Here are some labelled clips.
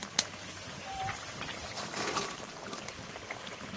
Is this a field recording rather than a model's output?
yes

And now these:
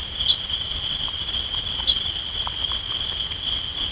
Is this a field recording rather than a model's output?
yes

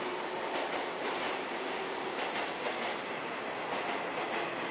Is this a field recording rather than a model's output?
yes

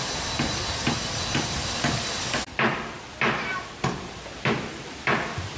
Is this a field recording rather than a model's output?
yes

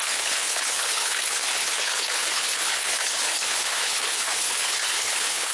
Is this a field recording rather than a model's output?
no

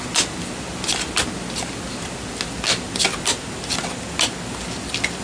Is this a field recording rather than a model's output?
yes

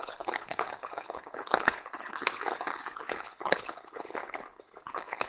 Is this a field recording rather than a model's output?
no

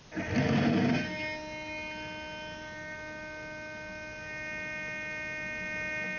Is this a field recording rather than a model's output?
yes